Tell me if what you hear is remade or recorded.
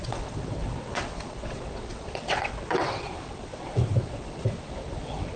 remade